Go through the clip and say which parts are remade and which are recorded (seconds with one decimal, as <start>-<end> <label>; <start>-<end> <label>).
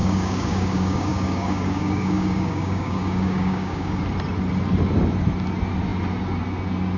0.0-4.0 remade; 4.0-7.0 recorded